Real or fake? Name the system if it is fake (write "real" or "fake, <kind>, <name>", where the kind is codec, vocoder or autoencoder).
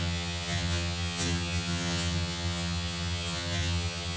fake, vocoder, HiFi-GAN